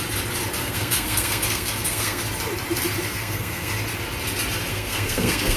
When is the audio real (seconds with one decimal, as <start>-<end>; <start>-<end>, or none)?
0.0-0.6; 2.2-3.1; 3.7-4.7